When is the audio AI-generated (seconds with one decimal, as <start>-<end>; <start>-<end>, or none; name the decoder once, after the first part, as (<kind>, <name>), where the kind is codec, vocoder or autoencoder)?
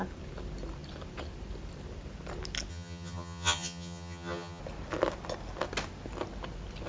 2.7-4.6 (vocoder, HiFi-GAN)